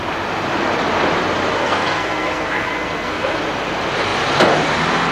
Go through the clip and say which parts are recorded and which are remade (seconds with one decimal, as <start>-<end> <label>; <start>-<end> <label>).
0.0-1.6 recorded; 1.6-3.4 remade; 3.4-5.1 recorded

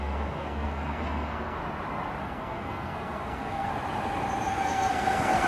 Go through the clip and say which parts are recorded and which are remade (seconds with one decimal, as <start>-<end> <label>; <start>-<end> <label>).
0.0-1.6 remade; 1.6-2.2 recorded; 2.2-3.7 remade; 3.7-4.5 recorded; 4.5-5.5 remade

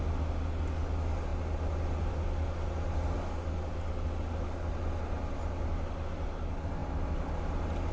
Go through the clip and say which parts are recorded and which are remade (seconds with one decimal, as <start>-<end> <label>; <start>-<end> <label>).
0.0-7.9 recorded

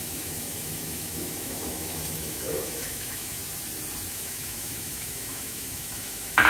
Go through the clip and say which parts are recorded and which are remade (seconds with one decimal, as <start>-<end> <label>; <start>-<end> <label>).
0.0-3.4 remade; 3.4-4.1 recorded; 4.1-6.5 remade

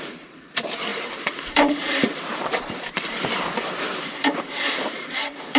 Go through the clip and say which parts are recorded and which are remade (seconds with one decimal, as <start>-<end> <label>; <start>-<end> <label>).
0.0-5.6 remade